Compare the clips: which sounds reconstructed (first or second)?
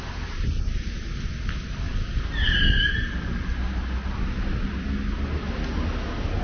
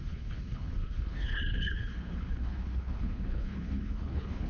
second